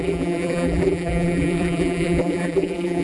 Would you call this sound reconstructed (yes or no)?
yes